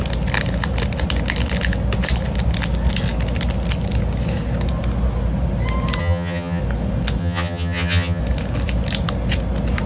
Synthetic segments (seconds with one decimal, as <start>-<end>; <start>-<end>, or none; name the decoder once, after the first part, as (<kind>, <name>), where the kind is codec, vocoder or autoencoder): 6.0-6.6 (vocoder, HiFi-GAN); 7.2-8.2